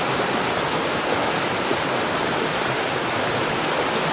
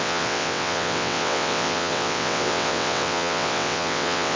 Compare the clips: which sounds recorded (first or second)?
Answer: first